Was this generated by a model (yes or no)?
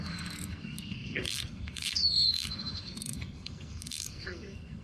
yes